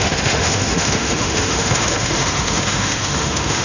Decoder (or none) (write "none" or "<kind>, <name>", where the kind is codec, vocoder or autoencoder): autoencoder, DAC-VAE